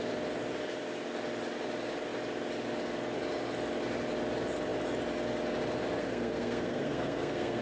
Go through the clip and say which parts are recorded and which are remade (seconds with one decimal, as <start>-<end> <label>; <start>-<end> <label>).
0.0-6.0 recorded; 6.0-7.6 remade